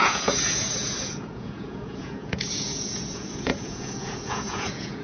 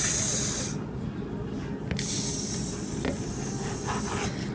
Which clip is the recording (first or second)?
second